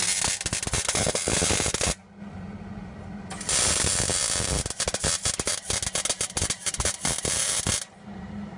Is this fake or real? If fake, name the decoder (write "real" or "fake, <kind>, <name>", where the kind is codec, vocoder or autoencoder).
real